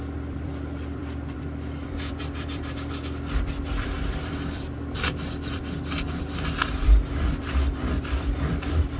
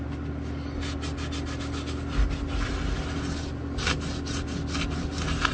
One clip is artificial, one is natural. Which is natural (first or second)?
second